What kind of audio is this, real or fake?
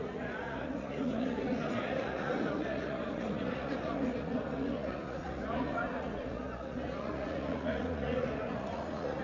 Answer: fake